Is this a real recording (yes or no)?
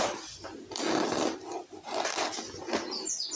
yes